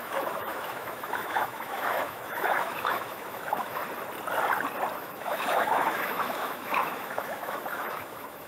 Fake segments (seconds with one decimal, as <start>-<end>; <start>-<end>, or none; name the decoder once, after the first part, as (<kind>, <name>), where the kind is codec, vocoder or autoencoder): 0.0-3.8 (autoencoder, DAC-VAE); 5.0-8.5